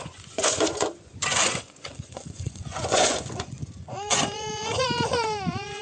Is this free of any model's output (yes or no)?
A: no